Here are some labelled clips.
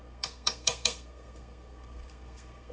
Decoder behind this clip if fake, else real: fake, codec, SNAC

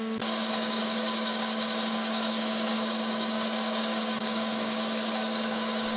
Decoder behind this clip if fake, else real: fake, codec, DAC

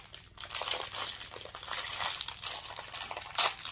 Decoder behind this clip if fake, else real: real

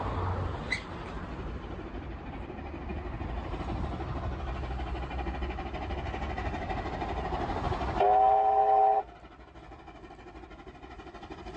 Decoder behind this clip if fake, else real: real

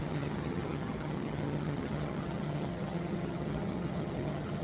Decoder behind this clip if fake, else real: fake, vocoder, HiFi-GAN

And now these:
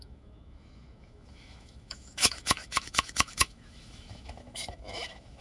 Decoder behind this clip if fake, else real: fake, autoencoder, DAC-VAE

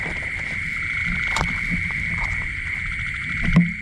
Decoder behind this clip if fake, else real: real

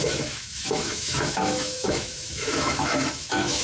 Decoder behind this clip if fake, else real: fake, autoencoder, DAC-VAE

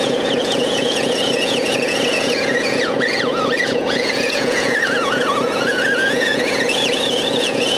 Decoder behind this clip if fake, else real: fake, vocoder, Vocos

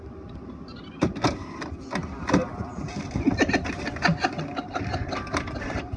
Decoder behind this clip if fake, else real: real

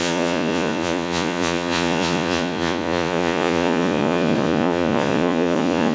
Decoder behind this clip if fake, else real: fake, vocoder, Vocos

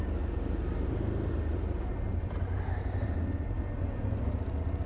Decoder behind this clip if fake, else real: real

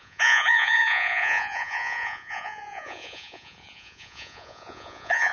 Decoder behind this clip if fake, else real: fake, vocoder, Vocos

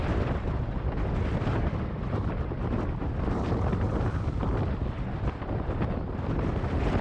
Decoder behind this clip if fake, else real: real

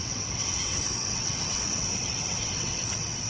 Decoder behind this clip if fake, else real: fake, vocoder, WaveNeXt